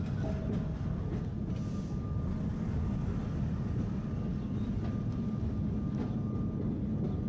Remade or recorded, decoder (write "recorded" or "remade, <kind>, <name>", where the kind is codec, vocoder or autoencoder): recorded